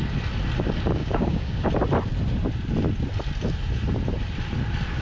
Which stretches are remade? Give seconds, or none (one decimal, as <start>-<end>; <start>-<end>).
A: 1.0-1.7